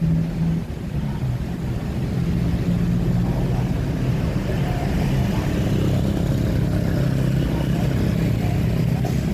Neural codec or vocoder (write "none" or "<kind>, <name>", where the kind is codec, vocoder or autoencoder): none